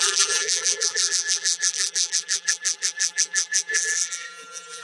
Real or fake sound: fake